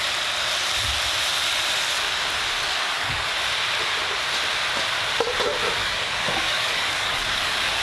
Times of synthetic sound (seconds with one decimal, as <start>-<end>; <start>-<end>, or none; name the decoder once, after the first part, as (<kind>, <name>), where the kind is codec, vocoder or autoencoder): 2.7-3.3 (codec, DAC); 5.8-7.8